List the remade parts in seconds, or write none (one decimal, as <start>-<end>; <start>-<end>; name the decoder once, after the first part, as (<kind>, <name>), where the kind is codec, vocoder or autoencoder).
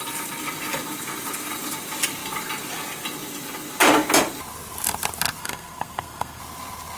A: 5.4-6.4 (codec, SNAC)